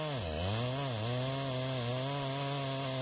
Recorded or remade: recorded